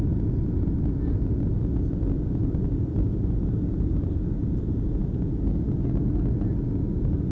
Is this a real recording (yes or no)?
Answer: yes